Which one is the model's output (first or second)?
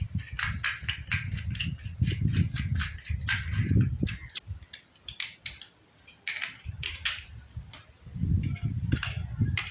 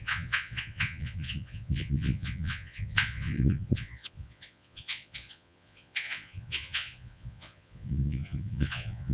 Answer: second